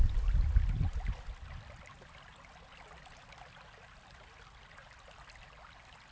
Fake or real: real